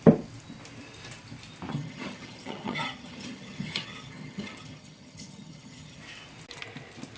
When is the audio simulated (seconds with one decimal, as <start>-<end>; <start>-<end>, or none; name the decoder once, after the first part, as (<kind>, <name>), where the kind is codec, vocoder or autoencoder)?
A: 1.7-6.0 (vocoder, HiFi-GAN)